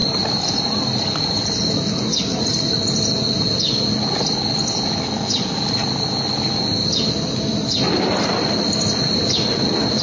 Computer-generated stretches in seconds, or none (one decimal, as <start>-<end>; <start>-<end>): 0.0-1.8